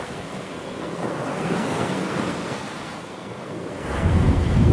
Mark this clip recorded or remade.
remade